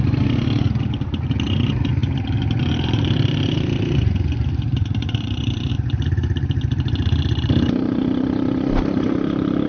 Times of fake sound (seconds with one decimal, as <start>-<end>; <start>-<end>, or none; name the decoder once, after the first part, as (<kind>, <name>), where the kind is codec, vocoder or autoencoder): 0.0-9.7 (vocoder, BigVGAN v2)